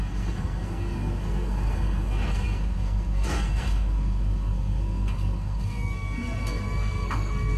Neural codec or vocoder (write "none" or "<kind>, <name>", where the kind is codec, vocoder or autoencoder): codec, SNAC